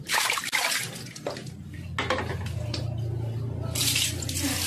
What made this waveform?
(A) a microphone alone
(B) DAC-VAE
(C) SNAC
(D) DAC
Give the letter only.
A